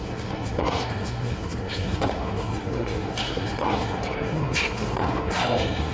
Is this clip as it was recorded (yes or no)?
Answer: no